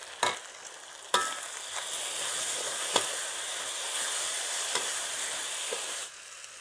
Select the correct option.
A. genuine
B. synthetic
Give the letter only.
A